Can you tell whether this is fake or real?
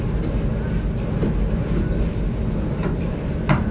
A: real